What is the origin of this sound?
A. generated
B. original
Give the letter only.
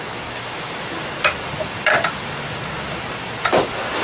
B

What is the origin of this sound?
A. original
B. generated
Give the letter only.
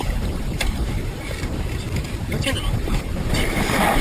B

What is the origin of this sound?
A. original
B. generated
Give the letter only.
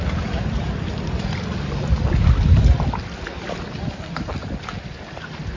A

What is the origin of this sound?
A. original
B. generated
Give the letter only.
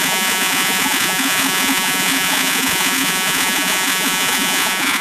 B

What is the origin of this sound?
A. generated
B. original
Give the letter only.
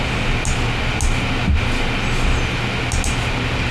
B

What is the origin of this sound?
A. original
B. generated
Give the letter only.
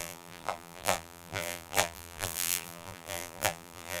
B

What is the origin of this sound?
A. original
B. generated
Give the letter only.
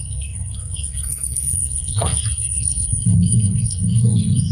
B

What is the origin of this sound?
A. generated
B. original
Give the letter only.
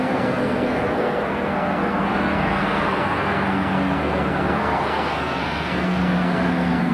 A